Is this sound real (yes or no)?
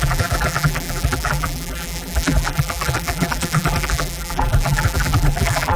no